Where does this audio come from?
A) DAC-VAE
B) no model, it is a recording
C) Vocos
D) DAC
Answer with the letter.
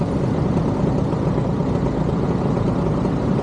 B